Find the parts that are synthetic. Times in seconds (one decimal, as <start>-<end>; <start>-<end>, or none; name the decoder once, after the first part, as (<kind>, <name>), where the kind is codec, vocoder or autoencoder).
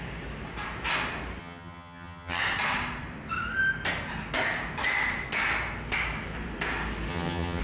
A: 1.4-2.4 (vocoder, HiFi-GAN); 7.1-7.6